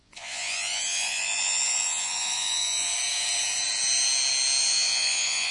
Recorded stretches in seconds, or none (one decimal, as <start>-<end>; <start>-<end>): 2.9-4.6